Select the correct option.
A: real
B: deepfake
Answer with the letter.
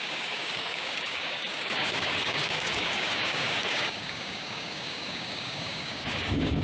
B